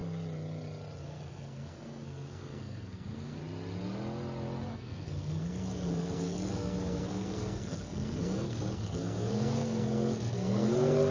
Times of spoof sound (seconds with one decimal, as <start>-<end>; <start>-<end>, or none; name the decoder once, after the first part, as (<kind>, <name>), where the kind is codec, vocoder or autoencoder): 1.0-3.4 (codec, SNAC); 4.7-11.1